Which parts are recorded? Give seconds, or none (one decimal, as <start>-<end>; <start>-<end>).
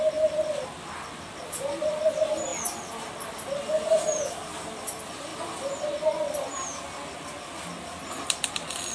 0.0-8.9